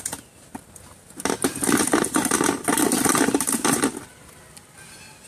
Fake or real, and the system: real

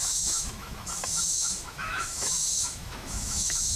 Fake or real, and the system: fake, autoencoder, DAC-VAE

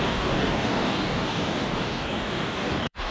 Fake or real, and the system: fake, codec, DAC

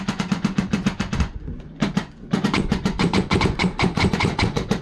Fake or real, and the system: fake, vocoder, Vocos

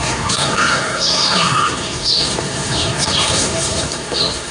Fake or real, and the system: fake, codec, SNAC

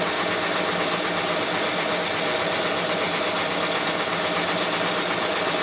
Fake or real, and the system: real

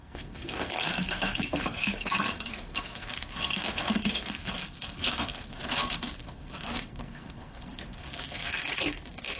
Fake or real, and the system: fake, codec, SNAC